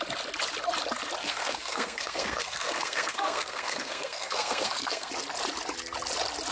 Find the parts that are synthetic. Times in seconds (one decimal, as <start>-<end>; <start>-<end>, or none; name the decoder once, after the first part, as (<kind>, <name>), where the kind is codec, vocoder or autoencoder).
1.2-5.1 (codec, SNAC)